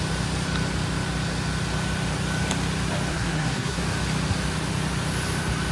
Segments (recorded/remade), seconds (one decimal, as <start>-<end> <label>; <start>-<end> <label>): 0.0-3.1 recorded; 3.1-3.8 remade; 3.8-5.7 recorded